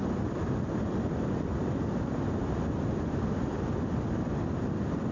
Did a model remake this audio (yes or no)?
no